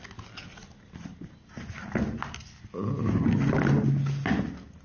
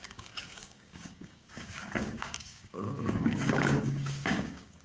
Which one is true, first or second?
first